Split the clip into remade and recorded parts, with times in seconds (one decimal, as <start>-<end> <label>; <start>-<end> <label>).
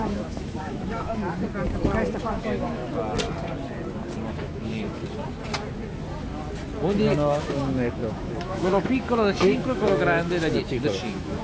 0.0-1.2 remade; 1.2-2.2 recorded; 2.2-2.8 remade; 2.8-4.3 recorded; 4.3-5.0 remade; 5.0-7.4 recorded; 7.4-11.4 remade